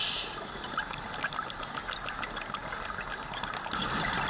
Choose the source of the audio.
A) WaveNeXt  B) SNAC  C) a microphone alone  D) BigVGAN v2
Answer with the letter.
C